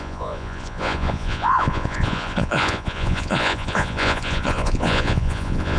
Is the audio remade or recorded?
remade